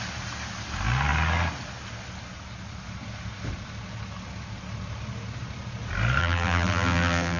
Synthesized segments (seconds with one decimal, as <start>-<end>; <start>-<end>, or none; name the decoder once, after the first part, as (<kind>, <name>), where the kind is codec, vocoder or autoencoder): 6.2-7.4 (vocoder, BigVGAN v2)